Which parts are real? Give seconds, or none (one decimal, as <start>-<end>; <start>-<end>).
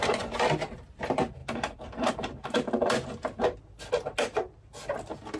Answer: 0.0-5.4